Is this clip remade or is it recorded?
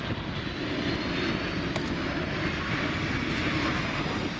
recorded